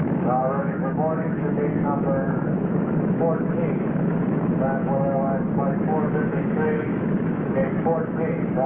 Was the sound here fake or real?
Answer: fake